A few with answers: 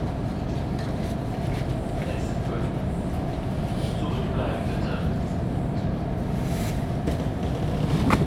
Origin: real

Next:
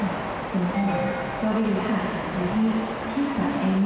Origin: real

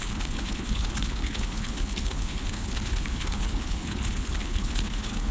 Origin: fake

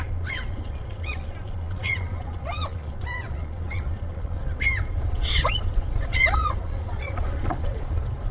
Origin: fake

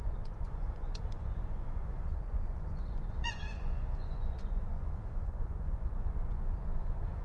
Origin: fake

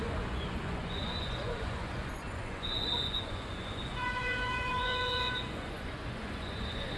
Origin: fake